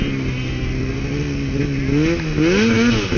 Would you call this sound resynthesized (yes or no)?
no